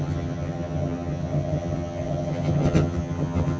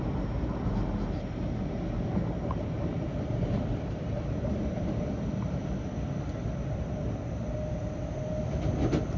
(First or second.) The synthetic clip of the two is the first